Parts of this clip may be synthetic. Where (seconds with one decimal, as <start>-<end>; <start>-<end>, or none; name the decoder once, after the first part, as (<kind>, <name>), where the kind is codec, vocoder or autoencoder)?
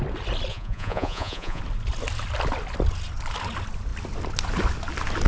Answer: 0.5-1.6 (vocoder, Vocos)